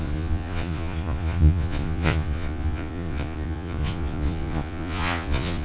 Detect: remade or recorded remade